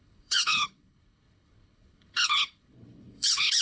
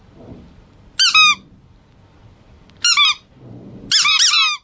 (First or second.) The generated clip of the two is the first